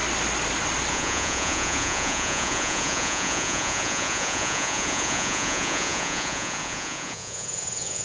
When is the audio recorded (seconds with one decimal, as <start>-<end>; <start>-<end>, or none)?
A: 0.0-0.9